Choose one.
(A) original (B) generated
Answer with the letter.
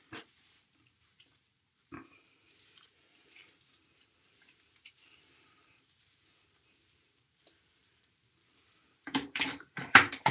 B